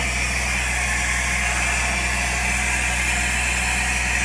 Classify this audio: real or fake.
real